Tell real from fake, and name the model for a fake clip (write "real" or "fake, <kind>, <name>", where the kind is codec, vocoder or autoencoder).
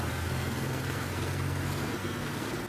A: fake, codec, SNAC